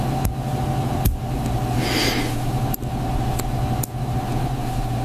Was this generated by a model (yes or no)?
no